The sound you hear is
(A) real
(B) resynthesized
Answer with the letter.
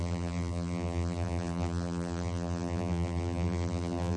B